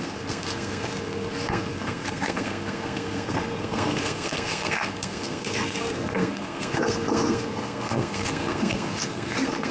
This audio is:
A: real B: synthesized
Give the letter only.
B